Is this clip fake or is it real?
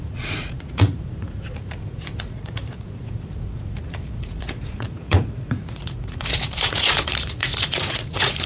fake